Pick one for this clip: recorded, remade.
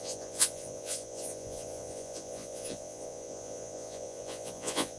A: remade